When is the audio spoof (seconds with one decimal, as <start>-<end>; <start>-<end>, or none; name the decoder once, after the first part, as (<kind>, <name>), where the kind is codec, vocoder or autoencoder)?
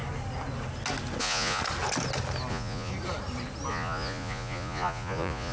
1.2-1.6 (vocoder, Vocos); 2.5-2.9; 3.7-5.5